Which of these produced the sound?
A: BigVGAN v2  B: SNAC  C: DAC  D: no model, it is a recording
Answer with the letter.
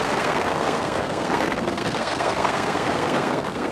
B